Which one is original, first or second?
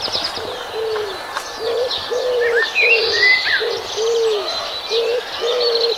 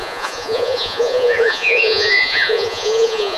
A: first